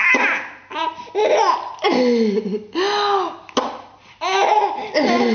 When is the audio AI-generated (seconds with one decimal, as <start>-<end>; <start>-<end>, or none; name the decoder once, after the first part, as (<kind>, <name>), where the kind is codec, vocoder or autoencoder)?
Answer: none